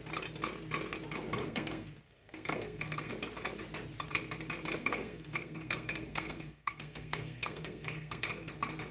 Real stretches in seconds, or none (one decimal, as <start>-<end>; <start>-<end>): 0.0-1.4; 3.1-4.8; 8.5-8.9